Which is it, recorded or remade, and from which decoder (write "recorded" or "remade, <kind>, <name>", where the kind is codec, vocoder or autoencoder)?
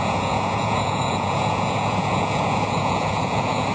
remade, vocoder, Vocos